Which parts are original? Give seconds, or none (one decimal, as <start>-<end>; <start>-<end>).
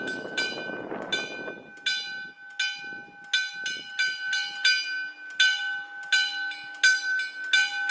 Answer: 0.0-7.9